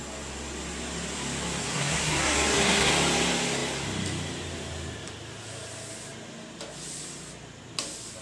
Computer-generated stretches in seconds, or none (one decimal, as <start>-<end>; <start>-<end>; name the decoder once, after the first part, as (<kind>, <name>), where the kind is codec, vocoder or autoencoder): 1.6-2.9 (codec, SNAC)